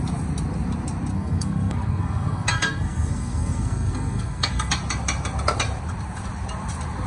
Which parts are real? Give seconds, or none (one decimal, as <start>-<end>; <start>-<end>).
0.0-1.1; 4.7-7.1